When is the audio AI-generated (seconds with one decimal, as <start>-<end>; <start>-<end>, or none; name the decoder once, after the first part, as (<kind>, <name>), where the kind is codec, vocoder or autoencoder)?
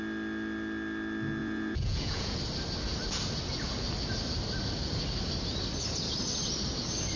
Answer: 1.4-2.4 (vocoder, Vocos)